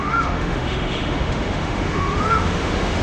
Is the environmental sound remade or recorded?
remade